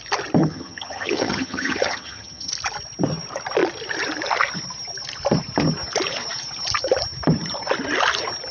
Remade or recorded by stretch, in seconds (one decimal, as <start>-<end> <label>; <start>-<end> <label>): 0.0-0.4 recorded; 0.4-2.5 remade; 2.5-8.5 recorded